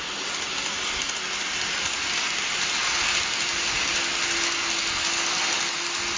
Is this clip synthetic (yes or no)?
no